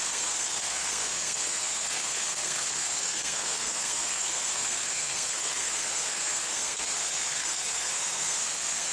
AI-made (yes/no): yes